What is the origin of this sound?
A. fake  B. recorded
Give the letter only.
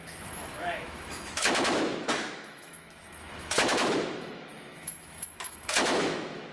A